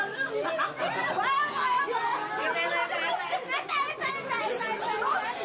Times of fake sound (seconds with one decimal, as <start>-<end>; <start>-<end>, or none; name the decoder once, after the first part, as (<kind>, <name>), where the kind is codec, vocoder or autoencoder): none